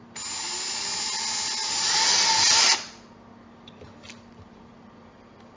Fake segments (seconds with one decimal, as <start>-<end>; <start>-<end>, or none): none